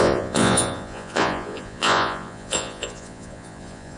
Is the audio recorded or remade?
remade